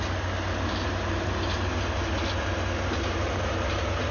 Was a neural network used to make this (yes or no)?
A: no